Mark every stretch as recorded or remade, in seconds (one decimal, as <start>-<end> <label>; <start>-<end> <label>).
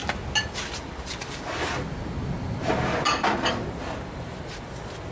0.0-5.1 recorded